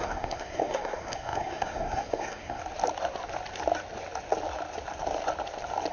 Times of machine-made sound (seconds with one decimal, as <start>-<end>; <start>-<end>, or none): 0.0-2.6